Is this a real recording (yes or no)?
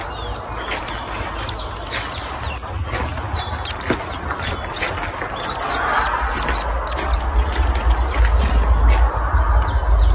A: yes